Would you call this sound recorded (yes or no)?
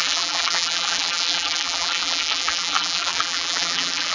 no